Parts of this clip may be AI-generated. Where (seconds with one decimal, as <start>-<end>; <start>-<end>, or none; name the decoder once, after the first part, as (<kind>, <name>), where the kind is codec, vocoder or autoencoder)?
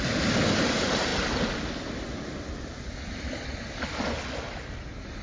none